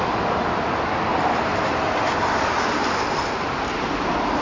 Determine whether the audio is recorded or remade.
recorded